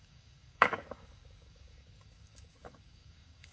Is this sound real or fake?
fake